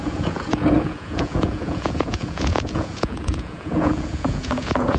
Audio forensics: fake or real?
fake